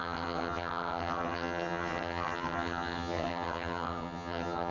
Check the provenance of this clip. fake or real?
fake